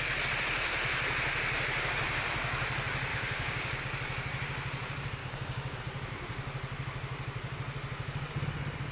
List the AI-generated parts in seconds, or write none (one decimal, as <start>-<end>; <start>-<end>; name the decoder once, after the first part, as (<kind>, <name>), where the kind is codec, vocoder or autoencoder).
3.1-3.8 (codec, DAC); 5.2-5.8